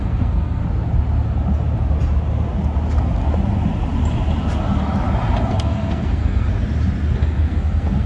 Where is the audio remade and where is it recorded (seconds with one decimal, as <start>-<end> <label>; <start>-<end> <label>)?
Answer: 0.0-0.6 remade; 0.6-5.5 recorded; 5.5-6.5 remade; 6.5-7.2 recorded; 7.2-8.1 remade